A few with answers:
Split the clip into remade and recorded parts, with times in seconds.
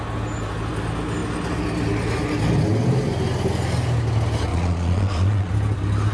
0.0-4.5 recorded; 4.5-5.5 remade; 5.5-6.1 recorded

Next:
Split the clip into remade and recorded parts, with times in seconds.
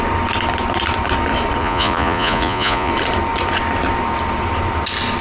0.0-1.6 recorded; 1.6-2.9 remade; 2.9-5.2 recorded